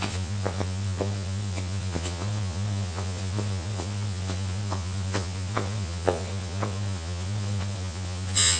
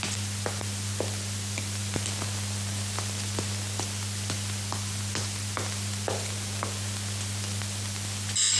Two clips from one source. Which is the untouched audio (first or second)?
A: second